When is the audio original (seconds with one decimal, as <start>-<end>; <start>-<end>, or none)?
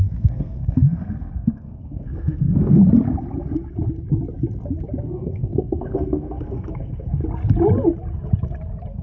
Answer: 2.8-5.0; 7.2-9.0